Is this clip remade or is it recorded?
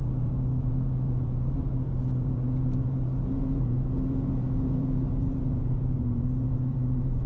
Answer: remade